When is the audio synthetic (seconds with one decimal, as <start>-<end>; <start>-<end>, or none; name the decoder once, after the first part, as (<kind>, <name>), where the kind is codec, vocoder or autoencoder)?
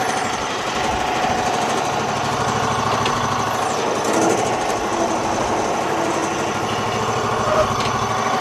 none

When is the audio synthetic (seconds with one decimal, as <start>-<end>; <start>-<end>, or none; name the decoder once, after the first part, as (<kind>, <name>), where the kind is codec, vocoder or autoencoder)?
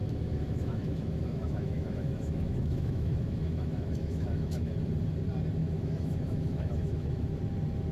0.0-4.7 (autoencoder, DAC-VAE); 5.6-7.3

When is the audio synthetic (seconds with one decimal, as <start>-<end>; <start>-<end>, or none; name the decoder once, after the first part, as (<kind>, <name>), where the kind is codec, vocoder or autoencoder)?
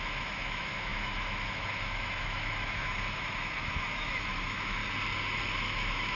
0.0-4.8 (autoencoder, DAC-VAE); 5.5-6.1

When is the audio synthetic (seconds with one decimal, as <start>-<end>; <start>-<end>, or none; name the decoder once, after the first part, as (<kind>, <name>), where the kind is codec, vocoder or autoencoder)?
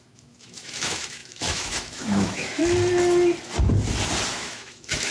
0.0-2.6 (autoencoder, DAC-VAE); 4.3-5.1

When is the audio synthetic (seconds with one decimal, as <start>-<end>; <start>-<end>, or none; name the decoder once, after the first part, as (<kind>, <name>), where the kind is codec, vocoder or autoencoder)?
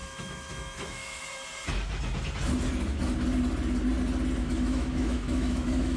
0.0-1.2 (autoencoder, DAC-VAE); 4.4-6.0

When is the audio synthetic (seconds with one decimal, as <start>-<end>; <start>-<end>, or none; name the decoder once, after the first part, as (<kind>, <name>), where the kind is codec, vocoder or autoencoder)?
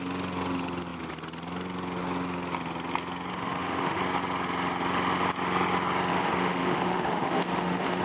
3.3-4.0 (autoencoder, DAC-VAE); 6.1-8.0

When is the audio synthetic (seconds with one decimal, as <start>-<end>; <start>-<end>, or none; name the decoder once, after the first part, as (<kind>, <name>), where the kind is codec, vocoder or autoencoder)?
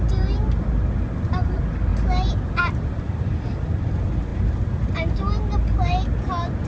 none